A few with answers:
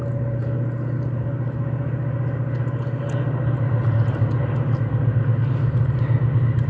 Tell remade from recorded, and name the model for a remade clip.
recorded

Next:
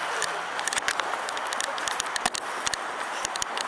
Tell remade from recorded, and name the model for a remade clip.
recorded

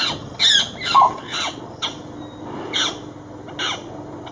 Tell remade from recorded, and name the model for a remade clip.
recorded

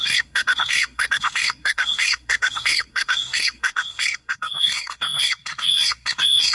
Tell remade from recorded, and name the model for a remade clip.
remade, codec, SNAC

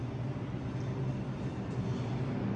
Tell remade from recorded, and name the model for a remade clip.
recorded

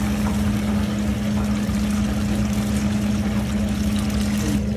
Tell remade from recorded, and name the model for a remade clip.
recorded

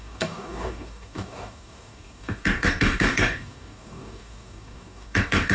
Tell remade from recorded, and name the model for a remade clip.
remade, codec, DAC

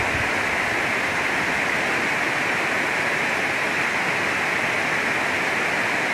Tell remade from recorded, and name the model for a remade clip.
recorded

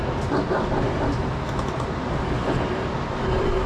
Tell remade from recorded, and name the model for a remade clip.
recorded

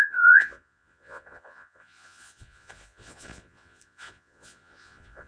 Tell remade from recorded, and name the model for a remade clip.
remade, vocoder, Vocos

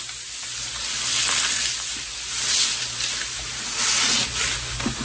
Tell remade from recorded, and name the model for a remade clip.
recorded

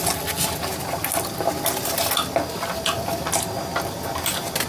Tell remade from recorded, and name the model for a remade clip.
recorded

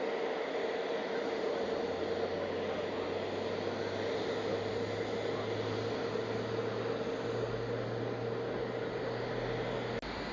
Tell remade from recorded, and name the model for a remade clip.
recorded